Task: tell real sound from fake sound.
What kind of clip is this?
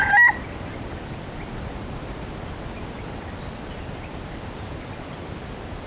real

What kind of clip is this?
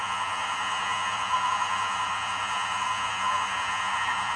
fake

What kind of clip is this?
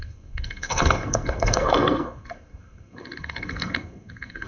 fake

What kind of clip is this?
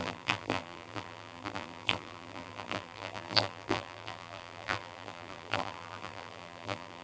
fake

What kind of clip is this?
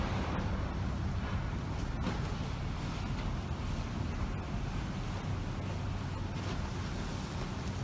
real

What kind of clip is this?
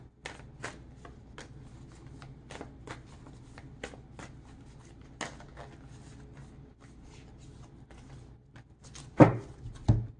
real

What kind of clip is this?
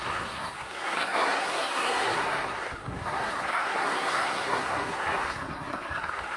fake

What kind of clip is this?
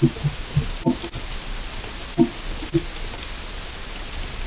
real